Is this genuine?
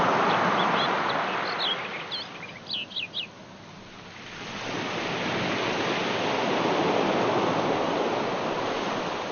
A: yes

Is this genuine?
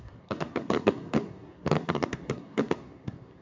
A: no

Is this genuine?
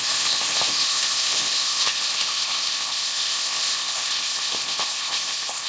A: no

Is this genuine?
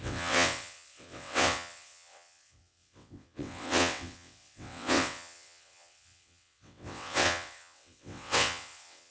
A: no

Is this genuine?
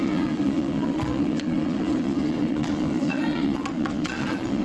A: no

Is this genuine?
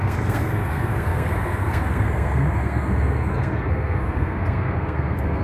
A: no